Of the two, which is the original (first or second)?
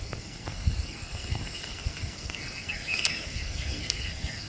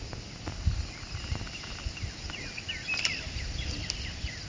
second